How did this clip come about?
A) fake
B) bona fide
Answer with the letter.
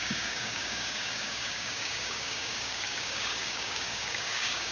A